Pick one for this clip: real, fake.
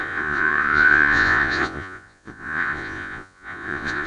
fake